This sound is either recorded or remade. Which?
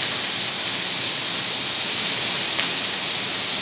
recorded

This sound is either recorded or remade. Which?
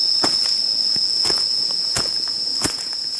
remade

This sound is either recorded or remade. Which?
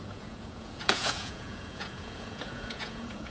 remade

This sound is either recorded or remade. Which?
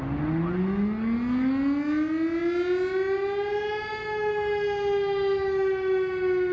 recorded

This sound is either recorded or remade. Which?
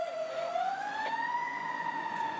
remade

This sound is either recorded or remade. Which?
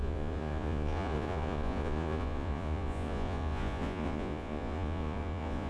remade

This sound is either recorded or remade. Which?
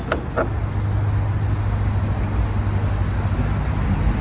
recorded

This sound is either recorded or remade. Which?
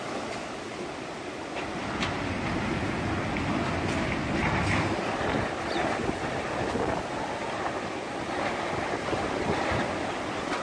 recorded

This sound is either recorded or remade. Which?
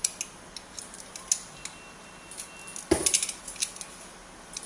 recorded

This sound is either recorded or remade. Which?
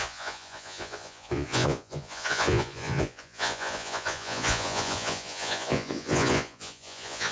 remade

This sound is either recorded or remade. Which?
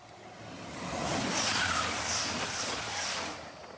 recorded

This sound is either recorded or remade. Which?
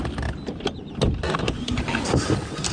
recorded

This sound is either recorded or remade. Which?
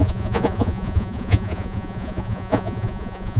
remade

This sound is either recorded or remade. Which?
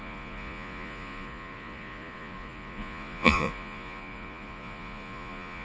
remade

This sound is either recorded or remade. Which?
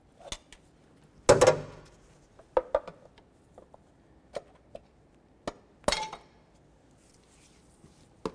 recorded